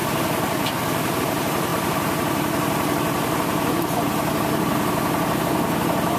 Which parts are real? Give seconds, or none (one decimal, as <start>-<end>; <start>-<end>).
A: 0.0-1.2